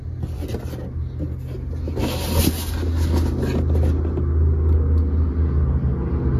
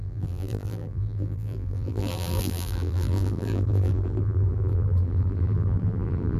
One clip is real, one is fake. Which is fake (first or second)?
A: second